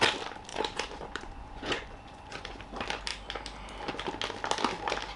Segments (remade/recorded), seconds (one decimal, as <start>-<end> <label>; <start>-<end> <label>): 0.0-0.5 recorded; 0.5-2.6 remade; 2.6-5.2 recorded